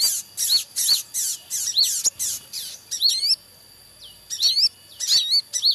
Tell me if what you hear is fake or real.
real